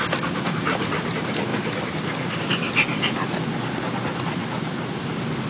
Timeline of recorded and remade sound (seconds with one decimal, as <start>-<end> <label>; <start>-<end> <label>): 0.0-5.5 recorded